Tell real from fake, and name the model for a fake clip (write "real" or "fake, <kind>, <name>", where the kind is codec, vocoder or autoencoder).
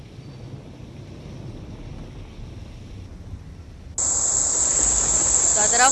real